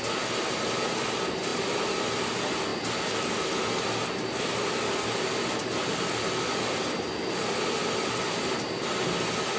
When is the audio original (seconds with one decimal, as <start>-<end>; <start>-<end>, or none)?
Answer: 0.0-9.6